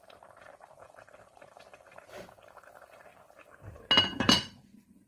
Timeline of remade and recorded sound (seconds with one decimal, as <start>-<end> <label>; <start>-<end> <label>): 0.0-3.1 remade; 3.1-4.0 recorded; 4.0-5.1 remade